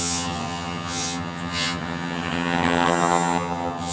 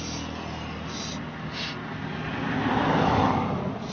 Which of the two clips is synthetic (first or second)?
first